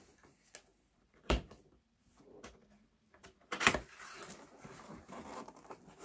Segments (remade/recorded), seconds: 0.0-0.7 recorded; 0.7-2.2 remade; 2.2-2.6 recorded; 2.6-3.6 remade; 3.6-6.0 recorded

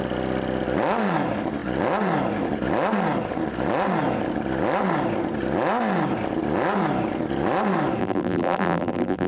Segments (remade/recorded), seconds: 0.0-8.0 recorded; 8.0-9.3 remade

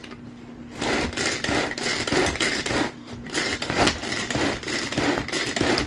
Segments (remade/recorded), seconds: 0.0-1.9 recorded; 1.9-5.4 remade; 5.4-5.9 recorded

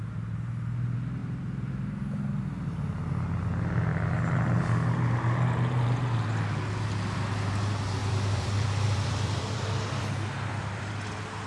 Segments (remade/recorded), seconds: 0.0-1.2 recorded; 1.2-1.7 remade; 1.7-3.9 recorded; 3.9-4.6 remade; 4.6-8.0 recorded; 8.0-10.9 remade; 10.9-11.5 recorded

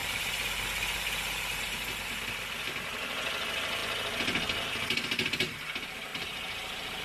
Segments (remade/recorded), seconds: 0.0-6.1 recorded; 6.1-7.0 remade